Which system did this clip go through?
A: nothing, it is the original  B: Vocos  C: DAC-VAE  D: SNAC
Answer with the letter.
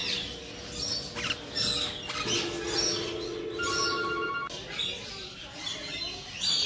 A